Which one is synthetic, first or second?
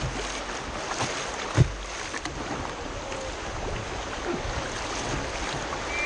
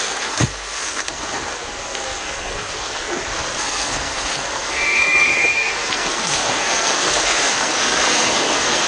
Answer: second